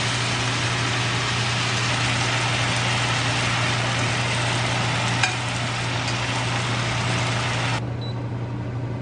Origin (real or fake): real